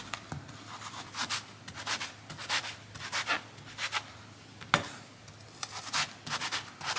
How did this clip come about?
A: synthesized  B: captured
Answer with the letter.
B